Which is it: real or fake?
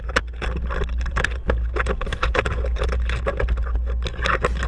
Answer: real